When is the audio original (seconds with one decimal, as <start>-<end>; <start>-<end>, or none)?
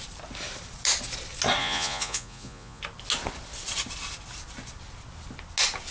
0.0-1.6; 2.8-5.9